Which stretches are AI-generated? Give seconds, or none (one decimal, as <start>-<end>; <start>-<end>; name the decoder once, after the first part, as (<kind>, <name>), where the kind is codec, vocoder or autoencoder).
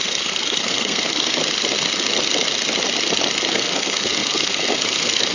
0.0-1.4 (codec, SNAC); 3.5-5.3